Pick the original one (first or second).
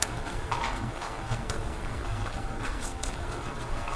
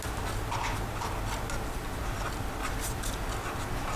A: second